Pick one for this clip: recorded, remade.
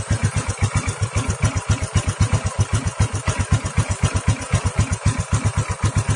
recorded